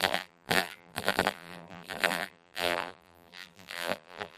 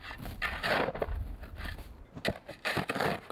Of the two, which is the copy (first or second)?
first